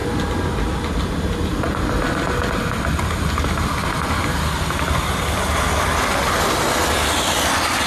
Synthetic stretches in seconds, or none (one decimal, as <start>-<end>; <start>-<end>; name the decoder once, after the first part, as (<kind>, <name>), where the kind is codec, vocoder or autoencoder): none